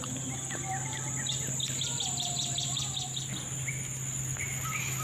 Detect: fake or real real